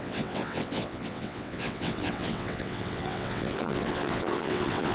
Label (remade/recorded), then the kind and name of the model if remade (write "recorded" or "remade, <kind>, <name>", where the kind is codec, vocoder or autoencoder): remade, vocoder, WaveNeXt